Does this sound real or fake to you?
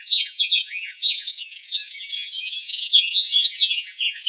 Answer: fake